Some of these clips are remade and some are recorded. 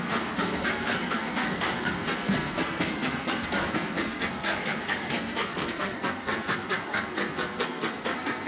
remade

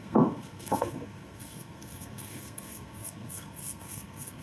remade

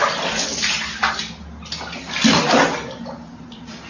recorded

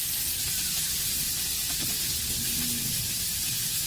recorded